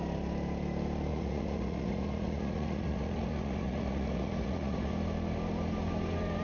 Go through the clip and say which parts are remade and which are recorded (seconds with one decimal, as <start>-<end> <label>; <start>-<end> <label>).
0.0-1.1 recorded; 1.1-4.9 remade; 4.9-6.4 recorded